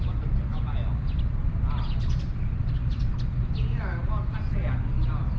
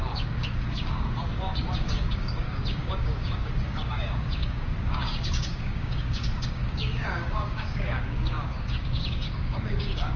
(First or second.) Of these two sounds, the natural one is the first